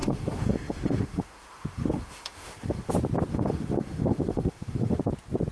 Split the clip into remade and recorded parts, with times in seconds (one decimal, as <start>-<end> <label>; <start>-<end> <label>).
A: 0.0-2.9 remade; 2.9-3.3 recorded; 3.3-5.0 remade; 5.0-5.5 recorded